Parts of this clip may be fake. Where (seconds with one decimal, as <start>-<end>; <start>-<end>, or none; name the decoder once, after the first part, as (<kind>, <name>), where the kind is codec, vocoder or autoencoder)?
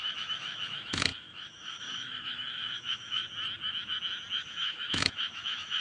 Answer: 0.0-3.2 (autoencoder, DAC-VAE); 4.4-5.8